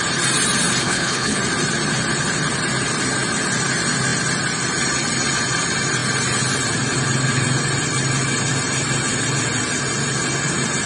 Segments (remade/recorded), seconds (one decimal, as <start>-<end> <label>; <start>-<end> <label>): 0.0-0.8 recorded; 0.8-1.4 remade; 1.4-10.9 recorded